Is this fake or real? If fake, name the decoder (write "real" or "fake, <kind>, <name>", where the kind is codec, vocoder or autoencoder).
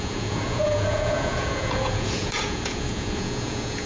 fake, vocoder, Vocos